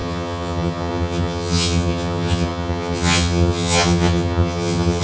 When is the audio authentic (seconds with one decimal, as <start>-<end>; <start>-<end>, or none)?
none